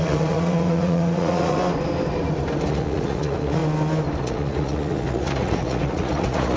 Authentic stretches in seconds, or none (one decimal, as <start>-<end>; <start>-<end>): 1.6-2.7; 3.6-4.2